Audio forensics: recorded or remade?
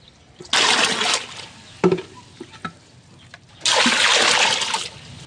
recorded